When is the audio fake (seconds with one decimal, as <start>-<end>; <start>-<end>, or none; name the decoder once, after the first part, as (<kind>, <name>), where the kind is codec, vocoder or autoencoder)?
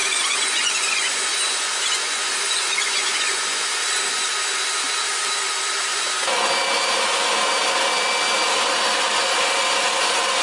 0.0-3.9 (vocoder, Vocos); 5.9-6.5